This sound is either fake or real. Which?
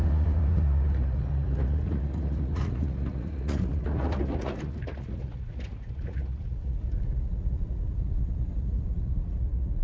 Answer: fake